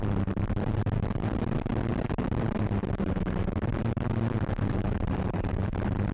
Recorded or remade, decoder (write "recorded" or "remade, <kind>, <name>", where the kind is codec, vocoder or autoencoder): remade, vocoder, BigVGAN v2